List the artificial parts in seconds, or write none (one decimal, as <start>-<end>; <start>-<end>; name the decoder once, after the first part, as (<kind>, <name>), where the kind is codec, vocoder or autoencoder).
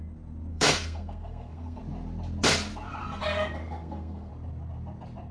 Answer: 0.5-1.8 (codec, SNAC); 3.0-4.3